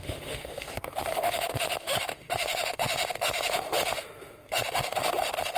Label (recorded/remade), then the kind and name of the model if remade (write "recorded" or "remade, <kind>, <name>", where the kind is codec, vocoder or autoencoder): remade, autoencoder, DAC-VAE